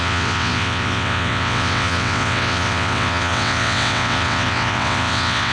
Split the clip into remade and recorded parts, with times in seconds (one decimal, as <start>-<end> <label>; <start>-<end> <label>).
0.0-5.5 remade

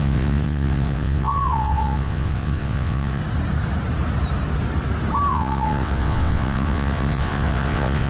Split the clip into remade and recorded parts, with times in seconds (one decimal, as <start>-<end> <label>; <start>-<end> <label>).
0.0-3.2 remade; 3.2-5.3 recorded; 5.3-8.1 remade

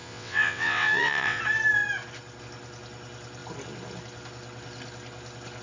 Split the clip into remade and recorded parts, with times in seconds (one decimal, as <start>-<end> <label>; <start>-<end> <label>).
0.0-1.4 remade; 1.4-5.6 recorded

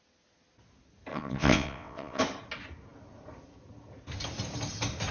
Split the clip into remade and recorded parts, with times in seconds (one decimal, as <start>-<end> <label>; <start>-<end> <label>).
0.0-1.1 recorded; 1.1-2.2 remade; 2.2-5.1 recorded

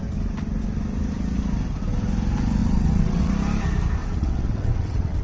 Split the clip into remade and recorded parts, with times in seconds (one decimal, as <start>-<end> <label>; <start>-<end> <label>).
0.0-2.6 recorded; 2.6-3.3 remade; 3.3-4.0 recorded; 4.0-5.2 remade

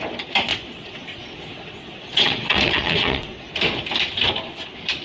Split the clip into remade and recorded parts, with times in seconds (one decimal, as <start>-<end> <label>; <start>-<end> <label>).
0.0-0.5 recorded; 0.5-3.5 remade; 3.5-5.0 recorded

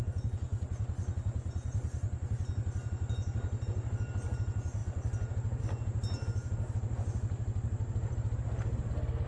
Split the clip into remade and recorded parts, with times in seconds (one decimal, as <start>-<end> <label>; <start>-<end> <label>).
0.0-9.3 recorded